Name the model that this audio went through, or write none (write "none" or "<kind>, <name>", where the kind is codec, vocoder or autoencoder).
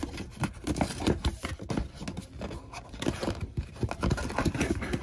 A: none